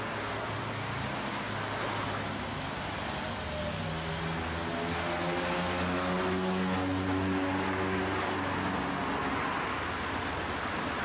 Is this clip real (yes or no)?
yes